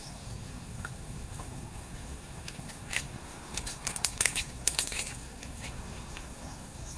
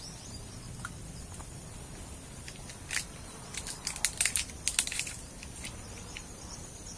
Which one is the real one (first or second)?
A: second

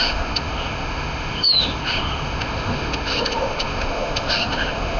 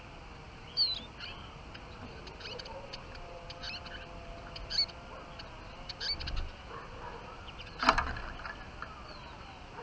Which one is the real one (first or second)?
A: second